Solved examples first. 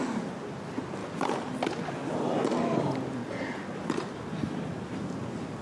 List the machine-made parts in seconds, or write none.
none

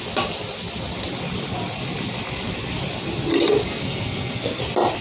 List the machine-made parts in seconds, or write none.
3.7-4.6 (codec, SNAC)

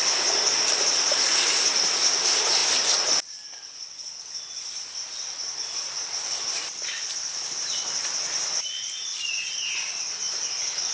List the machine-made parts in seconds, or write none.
none

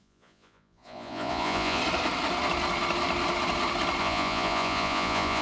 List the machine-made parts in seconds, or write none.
0.0-1.8 (vocoder, Vocos); 4.0-5.4

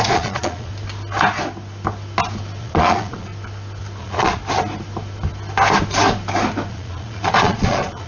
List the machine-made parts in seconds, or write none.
0.0-0.7 (vocoder, Vocos); 2.6-3.3; 4.0-4.4; 6.7-8.1